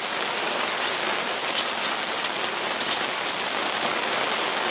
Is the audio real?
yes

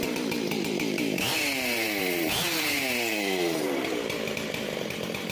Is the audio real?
no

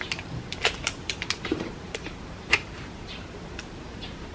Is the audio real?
no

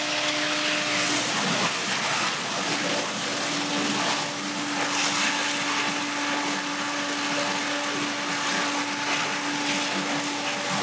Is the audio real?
yes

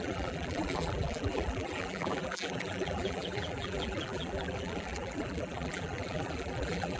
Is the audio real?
no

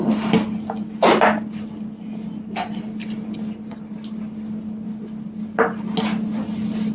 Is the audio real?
yes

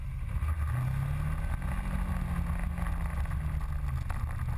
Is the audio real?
yes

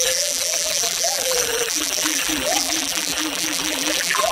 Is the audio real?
no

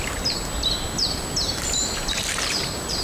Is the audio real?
no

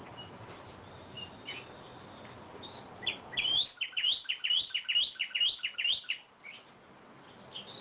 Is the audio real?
no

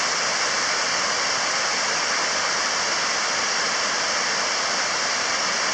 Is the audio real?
yes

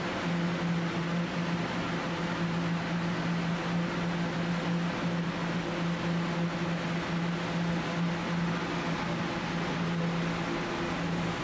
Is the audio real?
yes